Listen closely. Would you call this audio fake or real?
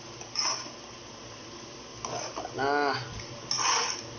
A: real